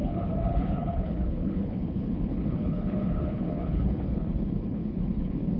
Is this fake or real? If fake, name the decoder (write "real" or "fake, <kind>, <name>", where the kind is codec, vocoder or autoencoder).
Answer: fake, codec, HILCodec